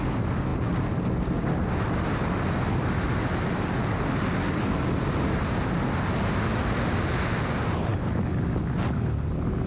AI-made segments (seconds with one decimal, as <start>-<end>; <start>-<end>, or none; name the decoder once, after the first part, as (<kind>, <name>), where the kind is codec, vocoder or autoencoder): none